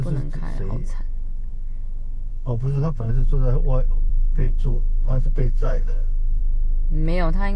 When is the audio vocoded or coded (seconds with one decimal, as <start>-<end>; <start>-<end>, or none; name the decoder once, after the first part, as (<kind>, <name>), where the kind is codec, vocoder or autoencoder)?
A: 2.3-3.1 (codec, SNAC); 4.1-6.4